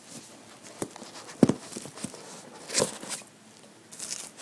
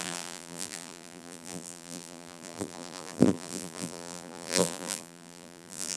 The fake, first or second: second